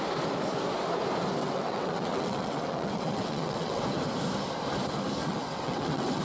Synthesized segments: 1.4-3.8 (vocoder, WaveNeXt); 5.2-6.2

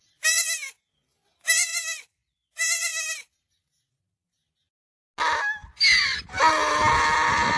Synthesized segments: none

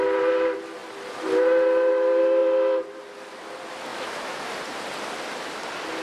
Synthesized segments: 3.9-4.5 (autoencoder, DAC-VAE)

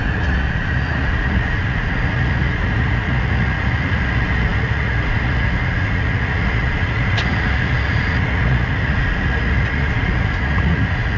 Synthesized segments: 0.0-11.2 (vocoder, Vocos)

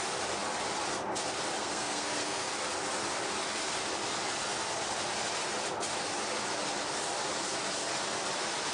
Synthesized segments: 1.6-2.5 (codec, SNAC)

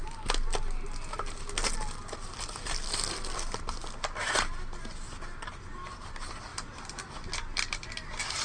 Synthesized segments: none

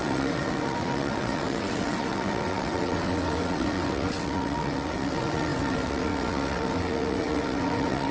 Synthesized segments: 0.0-8.1 (vocoder, WaveNeXt)

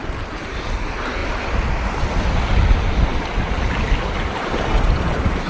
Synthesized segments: none